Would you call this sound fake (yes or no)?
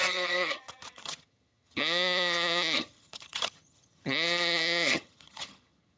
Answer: yes